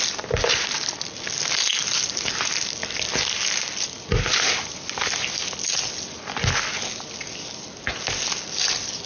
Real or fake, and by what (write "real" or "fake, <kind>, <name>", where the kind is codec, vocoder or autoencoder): real